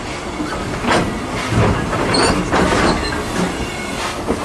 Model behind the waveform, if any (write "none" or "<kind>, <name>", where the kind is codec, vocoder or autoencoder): none